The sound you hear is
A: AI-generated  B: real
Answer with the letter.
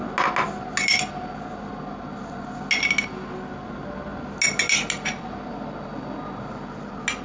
B